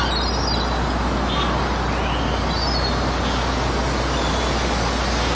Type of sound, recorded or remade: recorded